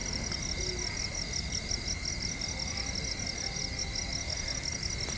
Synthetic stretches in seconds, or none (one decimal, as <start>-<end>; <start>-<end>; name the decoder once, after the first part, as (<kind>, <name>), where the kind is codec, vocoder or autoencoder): none